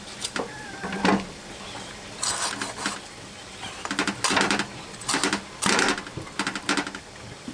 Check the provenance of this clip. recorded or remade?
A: recorded